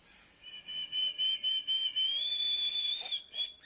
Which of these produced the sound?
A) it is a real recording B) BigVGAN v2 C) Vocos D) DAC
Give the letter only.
A